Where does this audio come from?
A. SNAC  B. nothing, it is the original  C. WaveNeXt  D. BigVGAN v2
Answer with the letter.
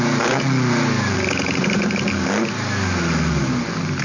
B